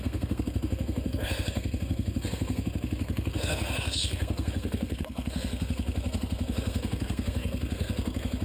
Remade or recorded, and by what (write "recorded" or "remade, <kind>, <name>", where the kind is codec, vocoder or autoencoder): remade, codec, SNAC